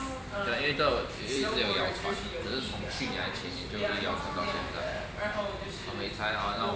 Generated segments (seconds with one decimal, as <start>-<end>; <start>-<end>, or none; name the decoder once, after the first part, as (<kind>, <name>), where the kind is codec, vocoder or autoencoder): 0.9-2.7 (vocoder, BigVGAN v2)